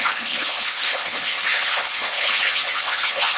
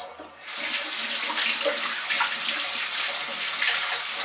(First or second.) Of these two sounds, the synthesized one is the first